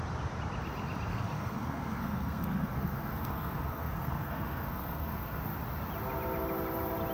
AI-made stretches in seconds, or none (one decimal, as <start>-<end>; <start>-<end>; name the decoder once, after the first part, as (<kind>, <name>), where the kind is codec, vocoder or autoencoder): 1.1-5.4 (codec, SNAC)